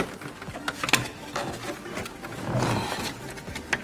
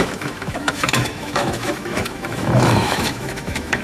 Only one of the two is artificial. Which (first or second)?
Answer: second